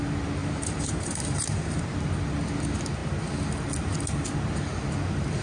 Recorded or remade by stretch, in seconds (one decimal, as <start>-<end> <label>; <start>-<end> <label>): 0.0-0.4 recorded; 0.4-2.1 remade; 2.1-5.4 recorded